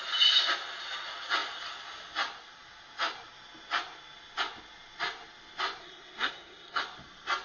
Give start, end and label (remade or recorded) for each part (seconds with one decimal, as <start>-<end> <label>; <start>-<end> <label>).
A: 0.0-5.8 recorded; 5.8-6.8 remade; 6.8-7.4 recorded